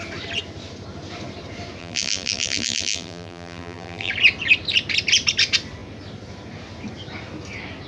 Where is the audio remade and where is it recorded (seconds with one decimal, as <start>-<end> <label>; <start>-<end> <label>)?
0.0-1.8 recorded; 1.8-4.1 remade; 4.1-7.9 recorded